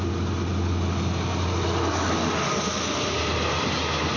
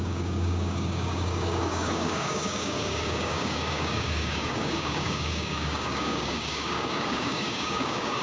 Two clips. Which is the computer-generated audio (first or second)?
second